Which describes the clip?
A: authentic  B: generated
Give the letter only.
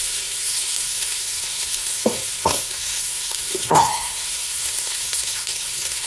B